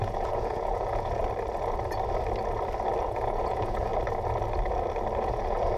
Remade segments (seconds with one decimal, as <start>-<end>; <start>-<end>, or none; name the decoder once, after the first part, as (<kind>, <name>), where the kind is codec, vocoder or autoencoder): 0.0-1.2 (vocoder, Vocos); 3.0-3.9; 5.2-5.8